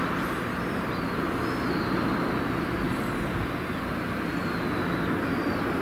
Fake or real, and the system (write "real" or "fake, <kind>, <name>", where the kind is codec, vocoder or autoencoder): real